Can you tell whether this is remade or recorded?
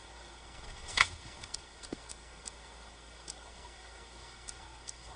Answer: remade